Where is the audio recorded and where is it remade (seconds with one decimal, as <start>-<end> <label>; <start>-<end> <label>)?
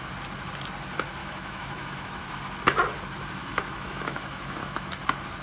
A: 0.0-1.2 recorded; 1.2-2.3 remade; 2.3-3.4 recorded; 3.4-5.0 remade; 5.0-5.4 recorded